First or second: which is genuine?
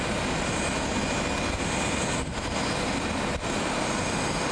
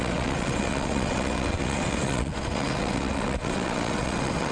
first